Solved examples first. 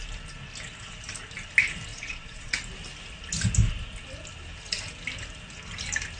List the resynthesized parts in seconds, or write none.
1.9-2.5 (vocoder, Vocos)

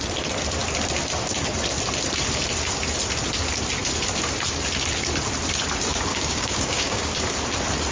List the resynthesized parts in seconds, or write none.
6.1-7.1 (codec, DAC)

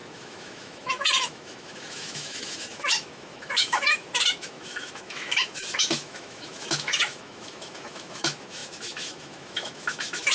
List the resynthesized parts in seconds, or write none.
0.0-10.3 (autoencoder, DAC-VAE)

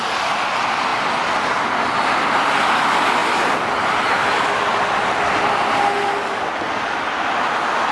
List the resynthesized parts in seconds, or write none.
none

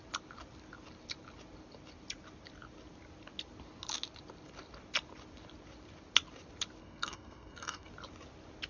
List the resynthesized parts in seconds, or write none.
6.8-7.9 (codec, SNAC)

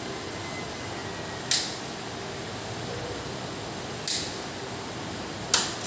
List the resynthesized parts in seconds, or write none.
none

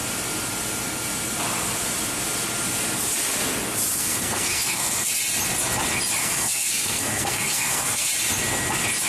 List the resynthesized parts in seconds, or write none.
4.0-5.2 (codec, SNAC); 6.2-8.1

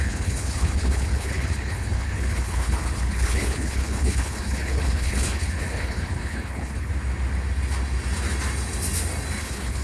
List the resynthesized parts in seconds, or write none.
0.0-6.9 (codec, HILCodec); 9.4-9.8